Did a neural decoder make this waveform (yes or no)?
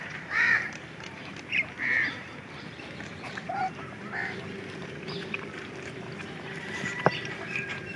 yes